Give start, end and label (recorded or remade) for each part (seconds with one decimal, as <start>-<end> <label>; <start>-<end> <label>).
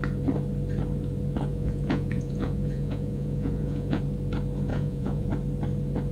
0.0-1.5 recorded; 1.5-4.0 remade; 4.0-4.7 recorded; 4.7-5.3 remade; 5.3-6.1 recorded